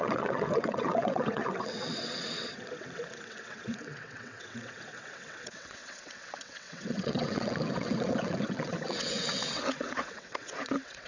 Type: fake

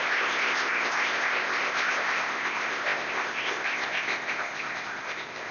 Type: fake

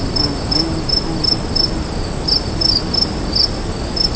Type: real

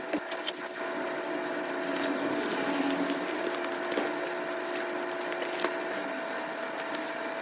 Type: real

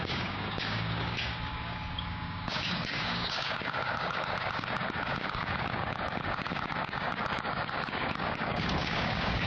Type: fake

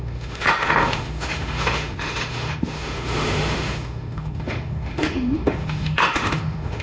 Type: fake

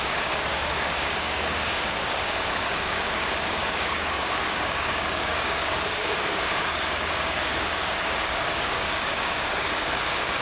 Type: fake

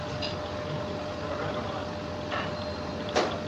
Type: fake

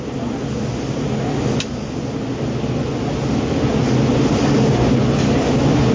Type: real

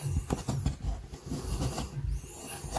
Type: real